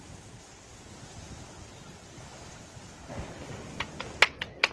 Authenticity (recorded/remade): recorded